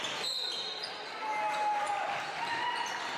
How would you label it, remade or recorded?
recorded